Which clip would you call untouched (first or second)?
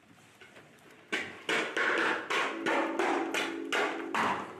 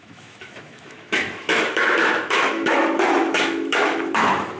first